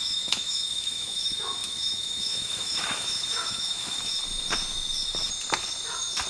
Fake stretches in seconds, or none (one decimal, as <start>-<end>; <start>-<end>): 0.0-4.2